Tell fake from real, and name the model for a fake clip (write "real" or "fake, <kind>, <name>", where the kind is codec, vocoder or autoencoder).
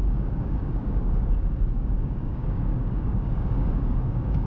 fake, codec, DAC